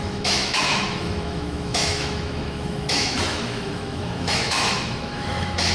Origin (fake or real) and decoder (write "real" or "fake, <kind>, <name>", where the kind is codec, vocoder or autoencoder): fake, autoencoder, DAC-VAE